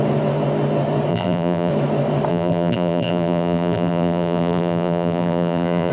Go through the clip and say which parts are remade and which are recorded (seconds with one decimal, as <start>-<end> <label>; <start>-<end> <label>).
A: 0.0-1.1 recorded; 1.1-1.7 remade; 1.7-2.3 recorded; 2.3-5.9 remade